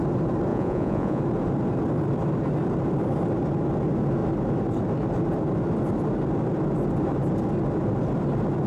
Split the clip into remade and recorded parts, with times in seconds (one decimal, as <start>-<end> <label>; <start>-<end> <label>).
0.0-0.5 recorded; 0.5-1.2 remade; 1.2-8.7 recorded